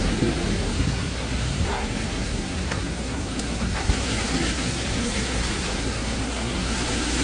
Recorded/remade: remade